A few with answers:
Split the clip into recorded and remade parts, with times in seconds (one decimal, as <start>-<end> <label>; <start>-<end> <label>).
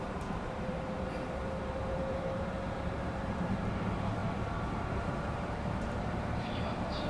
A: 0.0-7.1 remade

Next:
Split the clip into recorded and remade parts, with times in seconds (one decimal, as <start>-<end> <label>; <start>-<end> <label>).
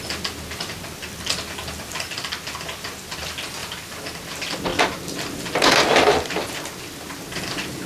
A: 0.0-3.6 recorded; 3.6-4.2 remade; 4.2-4.7 recorded; 4.7-5.3 remade; 5.3-5.9 recorded; 5.9-6.6 remade; 6.6-7.9 recorded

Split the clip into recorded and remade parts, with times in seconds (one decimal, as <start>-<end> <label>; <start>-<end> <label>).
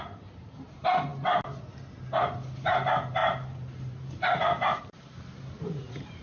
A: 0.0-1.1 remade; 1.1-1.7 recorded; 1.7-6.2 remade